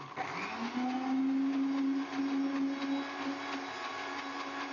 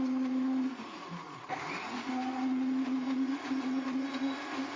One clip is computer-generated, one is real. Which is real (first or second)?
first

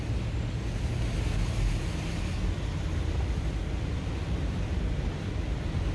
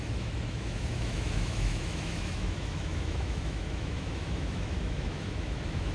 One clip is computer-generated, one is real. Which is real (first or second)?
first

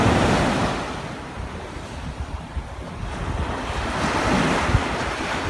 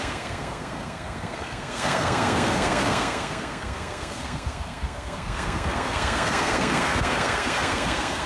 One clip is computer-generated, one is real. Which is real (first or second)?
first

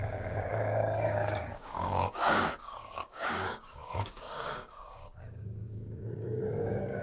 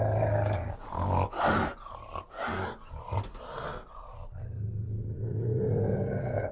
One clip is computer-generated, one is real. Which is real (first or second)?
second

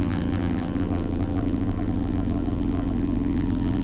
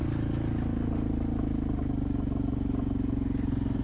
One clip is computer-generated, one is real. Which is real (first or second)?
second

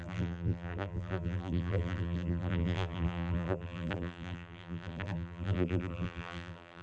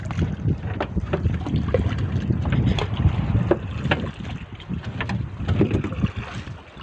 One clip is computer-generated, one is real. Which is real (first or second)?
second